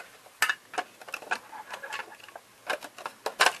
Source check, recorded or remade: recorded